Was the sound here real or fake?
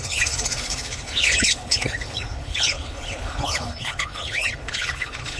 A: fake